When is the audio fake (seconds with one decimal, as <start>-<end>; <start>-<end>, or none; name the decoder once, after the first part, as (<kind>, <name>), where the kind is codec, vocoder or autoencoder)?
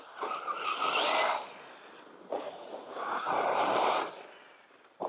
2.3-3.0 (vocoder, Vocos)